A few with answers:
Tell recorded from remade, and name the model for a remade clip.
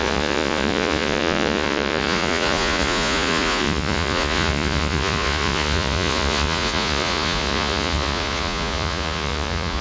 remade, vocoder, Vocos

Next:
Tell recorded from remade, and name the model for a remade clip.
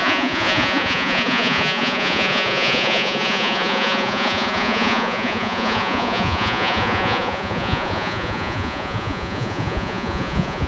remade, vocoder, Vocos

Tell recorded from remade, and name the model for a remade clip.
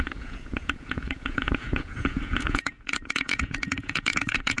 remade, vocoder, Vocos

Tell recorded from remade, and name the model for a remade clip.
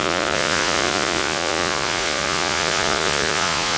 remade, vocoder, Vocos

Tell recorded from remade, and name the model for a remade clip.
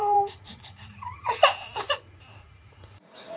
remade, vocoder, Vocos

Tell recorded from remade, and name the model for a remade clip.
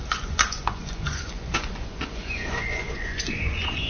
remade, vocoder, Vocos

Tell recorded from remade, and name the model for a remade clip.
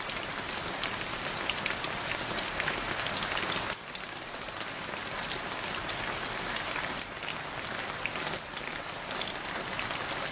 recorded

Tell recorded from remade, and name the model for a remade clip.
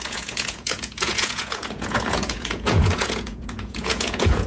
remade, vocoder, Vocos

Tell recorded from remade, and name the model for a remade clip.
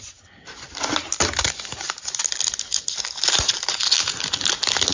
recorded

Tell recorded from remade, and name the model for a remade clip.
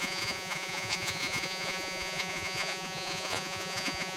remade, vocoder, Vocos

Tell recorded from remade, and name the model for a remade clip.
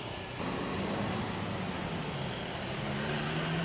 recorded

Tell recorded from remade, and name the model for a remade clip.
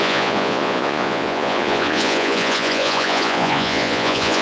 remade, vocoder, Vocos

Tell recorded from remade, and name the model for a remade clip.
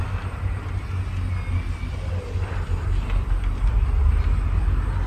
recorded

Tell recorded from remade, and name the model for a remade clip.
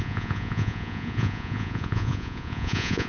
remade, vocoder, Vocos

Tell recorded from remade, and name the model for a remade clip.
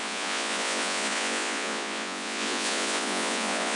remade, vocoder, Vocos